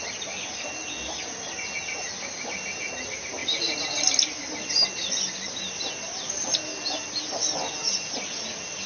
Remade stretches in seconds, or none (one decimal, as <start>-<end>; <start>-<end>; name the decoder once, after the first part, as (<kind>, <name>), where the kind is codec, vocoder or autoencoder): none